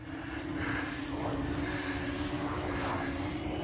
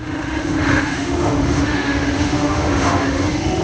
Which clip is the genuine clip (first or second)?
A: first